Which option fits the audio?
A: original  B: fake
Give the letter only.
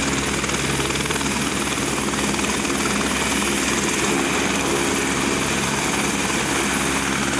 A